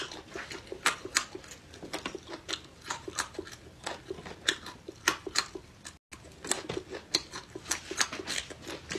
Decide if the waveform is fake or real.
real